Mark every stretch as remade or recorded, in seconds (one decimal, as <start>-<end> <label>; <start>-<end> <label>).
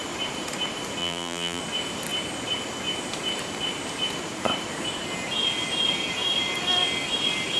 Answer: 0.0-1.0 recorded; 1.0-1.6 remade; 1.6-7.6 recorded